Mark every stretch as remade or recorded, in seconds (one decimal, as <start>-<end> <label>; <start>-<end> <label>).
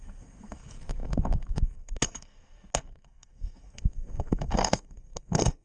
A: 0.0-5.6 remade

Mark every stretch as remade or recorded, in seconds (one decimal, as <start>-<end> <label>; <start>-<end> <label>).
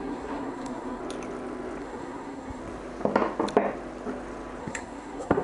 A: 0.0-1.0 remade; 1.0-1.8 recorded; 1.8-2.6 remade; 2.6-4.6 recorded; 4.6-5.4 remade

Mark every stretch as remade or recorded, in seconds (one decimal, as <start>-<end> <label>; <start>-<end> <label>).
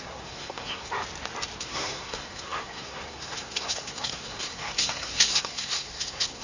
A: 0.0-0.9 remade; 0.9-1.6 recorded; 1.6-6.4 remade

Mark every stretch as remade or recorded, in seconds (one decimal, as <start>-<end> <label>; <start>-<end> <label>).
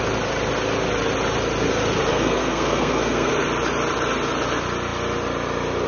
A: 0.0-2.1 recorded; 2.1-3.3 remade; 3.3-5.9 recorded